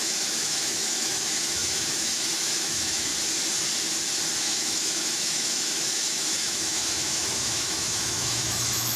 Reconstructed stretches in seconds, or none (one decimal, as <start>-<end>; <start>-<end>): 0.0-3.1; 4.4-9.0